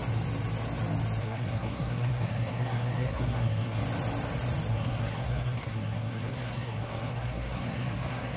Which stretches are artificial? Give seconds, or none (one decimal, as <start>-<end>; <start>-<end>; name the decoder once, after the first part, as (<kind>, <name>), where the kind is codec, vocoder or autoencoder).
1.2-3.8 (codec, SNAC); 4.7-8.4